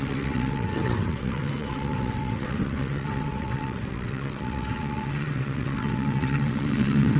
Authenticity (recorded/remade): remade